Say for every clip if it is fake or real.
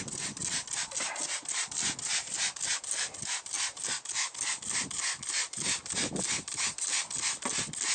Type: real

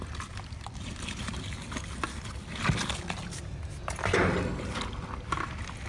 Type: real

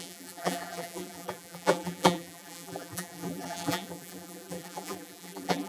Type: fake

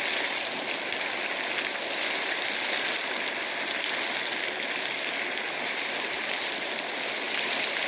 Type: real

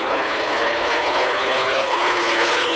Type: fake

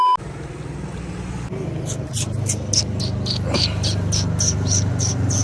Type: real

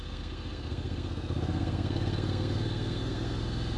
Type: fake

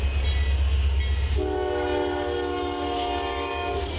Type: real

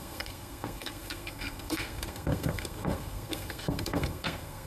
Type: fake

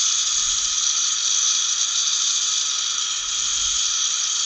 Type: real